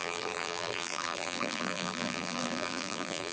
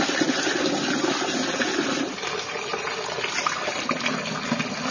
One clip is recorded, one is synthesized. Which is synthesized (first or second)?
first